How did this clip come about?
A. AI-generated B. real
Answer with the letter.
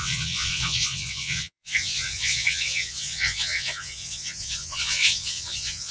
A